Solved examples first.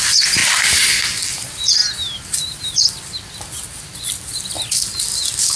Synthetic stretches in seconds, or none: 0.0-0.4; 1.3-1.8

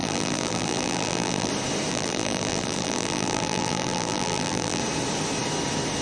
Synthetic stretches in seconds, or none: 0.0-1.5; 1.9-4.8

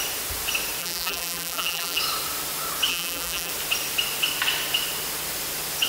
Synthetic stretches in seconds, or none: 0.8-2.0; 2.9-3.5